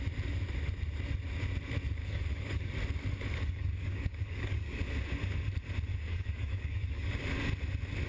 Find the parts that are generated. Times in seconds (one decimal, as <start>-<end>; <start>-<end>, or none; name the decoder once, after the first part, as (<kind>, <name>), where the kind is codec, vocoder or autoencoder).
2.0-2.7 (codec, DAC); 3.3-4.8; 6.1-7.1